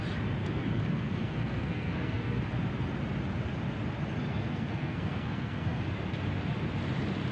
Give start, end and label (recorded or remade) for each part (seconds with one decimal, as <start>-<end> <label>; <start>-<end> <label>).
0.0-0.4 recorded; 0.4-2.4 remade; 2.4-4.3 recorded; 4.3-5.8 remade; 5.8-7.3 recorded